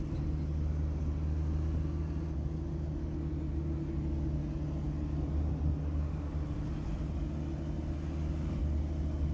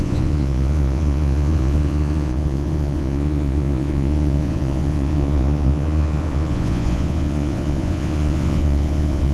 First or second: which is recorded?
first